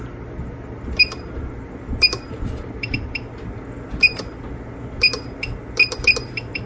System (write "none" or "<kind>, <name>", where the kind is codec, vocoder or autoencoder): none